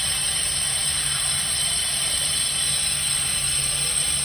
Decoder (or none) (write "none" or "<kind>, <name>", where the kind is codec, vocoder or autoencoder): none